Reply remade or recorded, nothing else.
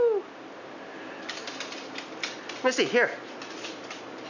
recorded